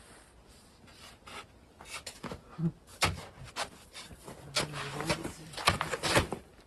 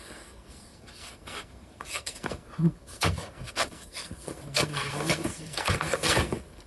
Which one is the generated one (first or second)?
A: second